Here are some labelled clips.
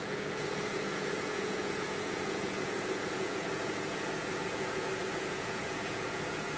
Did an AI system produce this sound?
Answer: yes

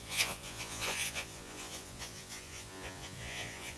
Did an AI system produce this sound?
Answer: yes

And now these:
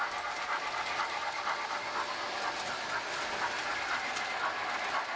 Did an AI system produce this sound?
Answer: no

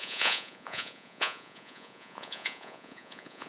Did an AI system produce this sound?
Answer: yes